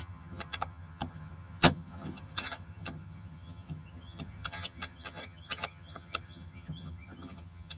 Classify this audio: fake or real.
fake